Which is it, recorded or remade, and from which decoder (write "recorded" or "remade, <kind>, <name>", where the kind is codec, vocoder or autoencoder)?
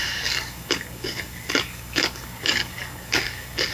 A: remade, codec, DAC